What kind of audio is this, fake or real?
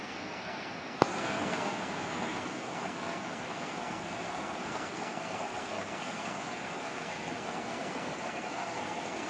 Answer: fake